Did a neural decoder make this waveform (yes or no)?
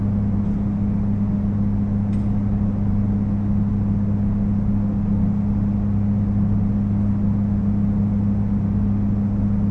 no